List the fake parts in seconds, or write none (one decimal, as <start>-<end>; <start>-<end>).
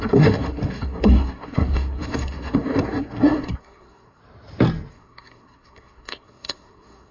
0.0-4.2; 4.9-7.1